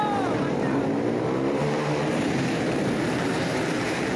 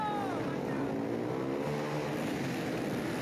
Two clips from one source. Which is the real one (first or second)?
second